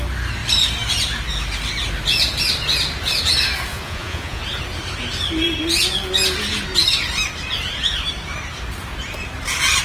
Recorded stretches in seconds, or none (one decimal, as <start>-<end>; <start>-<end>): 0.0-3.7; 4.4-9.8